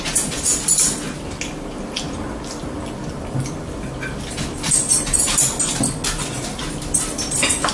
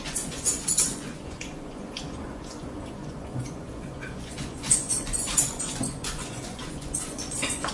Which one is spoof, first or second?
second